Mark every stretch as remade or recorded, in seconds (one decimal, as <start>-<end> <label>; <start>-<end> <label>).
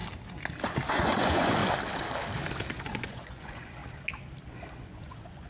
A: 0.0-0.9 recorded; 0.9-1.6 remade; 1.6-2.8 recorded; 2.8-3.8 remade; 3.8-4.5 recorded; 4.5-5.5 remade